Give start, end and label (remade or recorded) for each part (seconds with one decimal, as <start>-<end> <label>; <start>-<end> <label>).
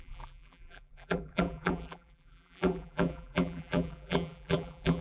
0.0-5.0 remade